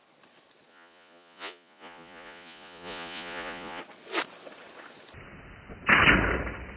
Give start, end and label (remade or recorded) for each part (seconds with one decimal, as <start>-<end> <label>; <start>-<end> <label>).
0.0-0.7 recorded; 0.7-3.8 remade; 3.8-6.8 recorded